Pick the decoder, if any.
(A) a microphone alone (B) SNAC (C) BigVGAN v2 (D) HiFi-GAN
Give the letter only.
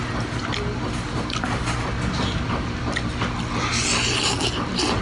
A